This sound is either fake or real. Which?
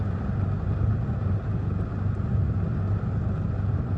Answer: real